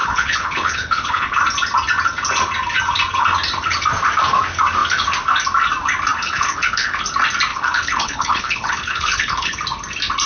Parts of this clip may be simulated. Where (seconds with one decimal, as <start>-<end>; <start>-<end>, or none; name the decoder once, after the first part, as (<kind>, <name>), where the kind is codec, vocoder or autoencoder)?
0.0-1.4 (codec, HILCodec); 6.2-7.0; 7.5-9.6